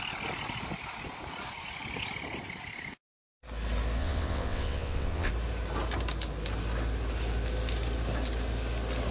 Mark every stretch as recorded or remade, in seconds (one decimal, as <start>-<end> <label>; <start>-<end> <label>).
0.0-4.0 recorded; 4.0-5.3 remade; 5.3-9.1 recorded